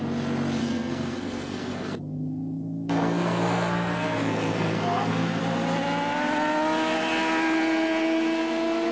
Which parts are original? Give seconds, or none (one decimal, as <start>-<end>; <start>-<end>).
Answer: 0.0-0.6; 5.4-8.9